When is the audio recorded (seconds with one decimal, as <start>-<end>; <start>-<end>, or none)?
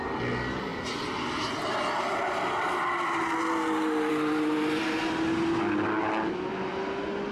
0.0-7.3